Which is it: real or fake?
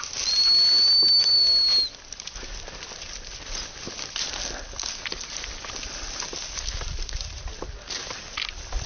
real